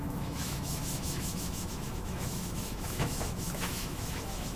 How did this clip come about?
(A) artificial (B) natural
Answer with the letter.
A